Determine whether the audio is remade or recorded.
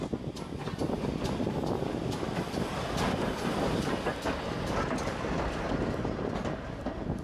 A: recorded